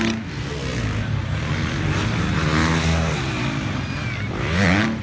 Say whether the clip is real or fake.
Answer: real